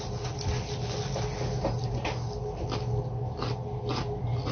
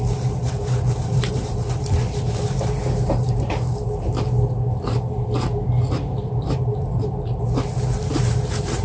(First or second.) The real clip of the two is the first